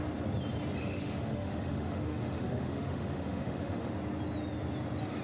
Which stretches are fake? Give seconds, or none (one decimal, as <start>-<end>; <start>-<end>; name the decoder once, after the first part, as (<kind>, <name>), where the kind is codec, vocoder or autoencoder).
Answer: 0.8-3.9 (autoencoder, DAC-VAE)

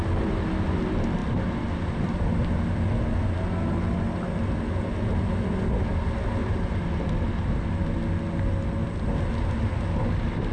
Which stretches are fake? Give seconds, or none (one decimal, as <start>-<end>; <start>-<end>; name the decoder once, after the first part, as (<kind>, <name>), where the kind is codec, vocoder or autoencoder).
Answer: 6.4-7.3 (vocoder, BigVGAN v2)

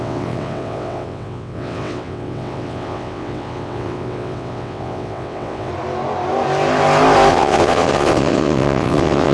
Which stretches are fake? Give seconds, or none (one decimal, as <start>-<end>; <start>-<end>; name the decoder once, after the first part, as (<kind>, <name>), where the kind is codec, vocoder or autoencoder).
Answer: 0.0-5.7 (vocoder, WaveNeXt); 7.3-9.3

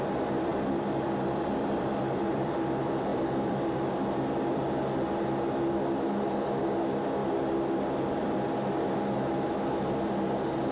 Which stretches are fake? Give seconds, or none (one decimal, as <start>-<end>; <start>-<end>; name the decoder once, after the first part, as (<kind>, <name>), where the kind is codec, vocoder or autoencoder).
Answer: 0.5-2.5 (vocoder, BigVGAN v2); 3.1-3.9

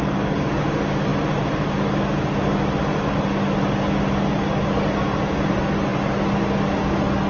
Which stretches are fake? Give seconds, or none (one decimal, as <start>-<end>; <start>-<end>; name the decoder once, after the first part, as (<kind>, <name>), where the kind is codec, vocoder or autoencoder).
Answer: none

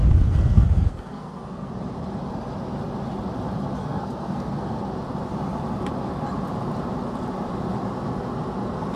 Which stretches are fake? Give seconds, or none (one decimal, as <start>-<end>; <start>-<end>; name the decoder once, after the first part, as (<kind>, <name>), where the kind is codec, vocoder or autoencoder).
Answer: 0.0-1.7 (codec, SNAC); 3.8-4.8

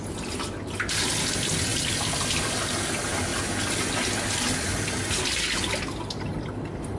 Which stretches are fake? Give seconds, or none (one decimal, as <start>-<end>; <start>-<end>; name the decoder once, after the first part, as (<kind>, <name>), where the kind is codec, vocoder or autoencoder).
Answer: 1.7-2.3 (vocoder, BigVGAN v2)